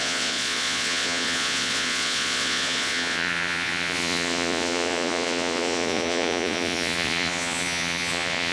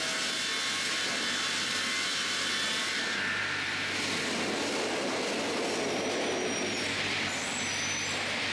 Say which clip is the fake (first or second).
first